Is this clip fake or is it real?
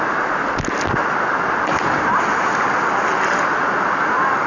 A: real